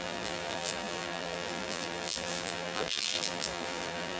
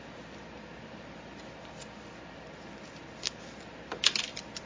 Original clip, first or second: second